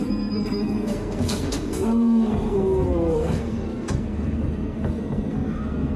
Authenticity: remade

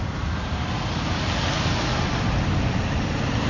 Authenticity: recorded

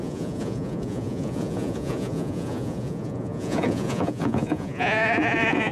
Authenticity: remade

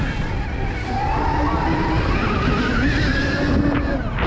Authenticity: recorded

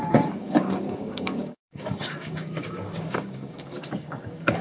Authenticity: remade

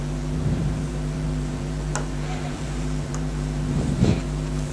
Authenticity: remade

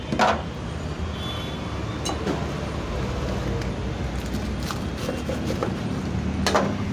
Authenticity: recorded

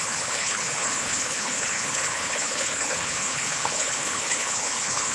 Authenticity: remade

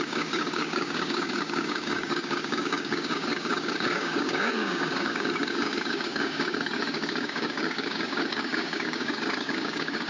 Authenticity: remade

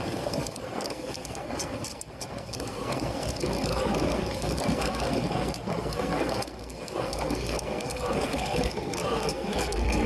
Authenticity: remade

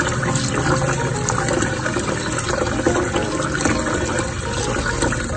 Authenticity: recorded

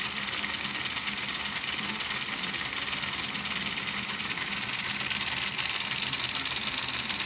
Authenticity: recorded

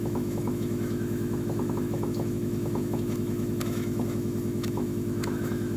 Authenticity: remade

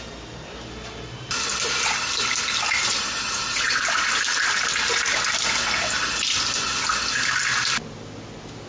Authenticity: recorded